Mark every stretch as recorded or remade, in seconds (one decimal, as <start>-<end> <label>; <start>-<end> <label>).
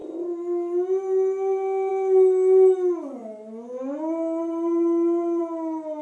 0.0-6.0 recorded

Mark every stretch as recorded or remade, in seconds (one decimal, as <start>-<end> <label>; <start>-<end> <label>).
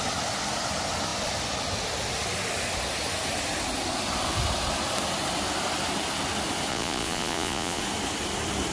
0.0-6.7 recorded; 6.7-7.8 remade; 7.8-8.7 recorded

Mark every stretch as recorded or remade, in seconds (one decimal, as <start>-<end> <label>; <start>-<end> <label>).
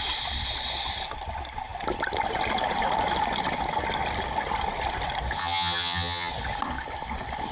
0.0-5.4 recorded; 5.4-6.3 remade; 6.3-7.5 recorded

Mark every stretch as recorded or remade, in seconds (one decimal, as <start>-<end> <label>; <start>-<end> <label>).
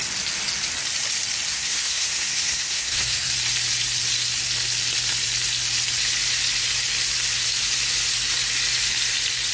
0.0-1.5 recorded; 1.5-3.3 remade; 3.3-9.5 recorded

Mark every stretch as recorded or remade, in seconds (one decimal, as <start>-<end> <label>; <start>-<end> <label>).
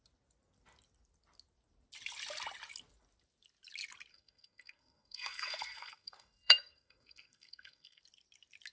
0.0-4.1 recorded; 4.1-8.0 remade; 8.0-8.7 recorded